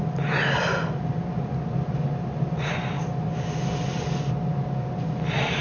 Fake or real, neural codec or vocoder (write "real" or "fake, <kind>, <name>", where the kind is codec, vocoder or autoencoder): real